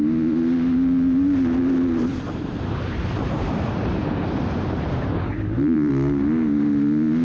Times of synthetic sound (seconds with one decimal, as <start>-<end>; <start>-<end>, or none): 2.1-5.9